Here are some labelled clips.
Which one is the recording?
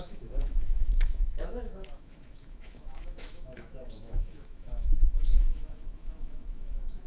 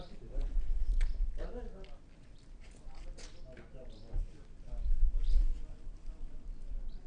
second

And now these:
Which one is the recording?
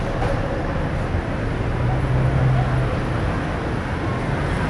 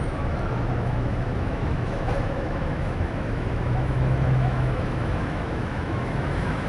first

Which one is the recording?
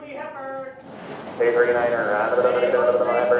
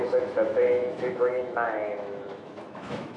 first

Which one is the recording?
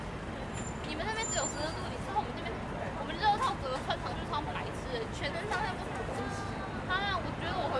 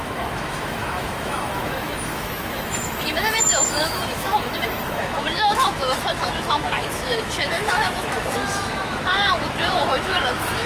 first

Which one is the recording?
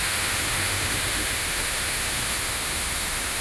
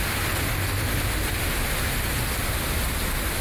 second